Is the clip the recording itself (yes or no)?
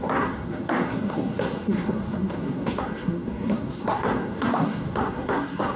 no